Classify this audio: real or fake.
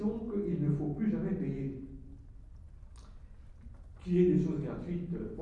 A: real